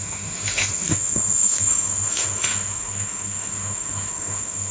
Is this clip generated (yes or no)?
yes